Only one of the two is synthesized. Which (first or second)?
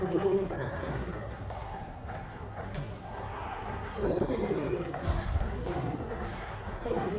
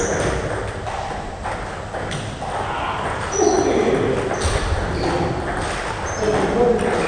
first